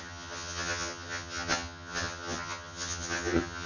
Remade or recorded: remade